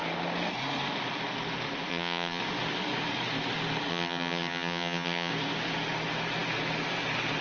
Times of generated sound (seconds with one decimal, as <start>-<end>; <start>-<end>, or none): 1.9-2.4; 3.9-5.3